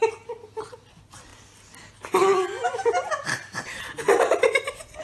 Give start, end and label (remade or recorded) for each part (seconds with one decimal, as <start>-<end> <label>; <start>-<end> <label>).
0.0-1.3 remade; 1.3-3.6 recorded; 3.6-5.0 remade